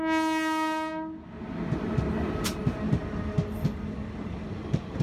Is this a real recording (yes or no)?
yes